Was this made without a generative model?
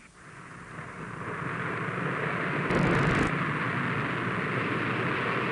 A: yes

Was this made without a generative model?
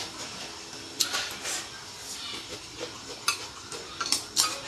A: yes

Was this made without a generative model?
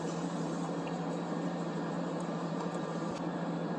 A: no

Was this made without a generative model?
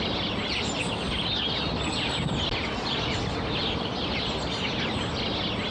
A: yes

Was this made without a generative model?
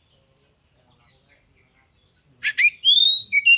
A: no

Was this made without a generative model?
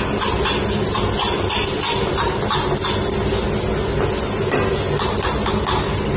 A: yes